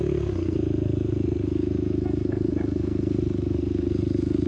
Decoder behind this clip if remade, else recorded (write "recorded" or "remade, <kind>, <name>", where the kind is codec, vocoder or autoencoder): remade, codec, SNAC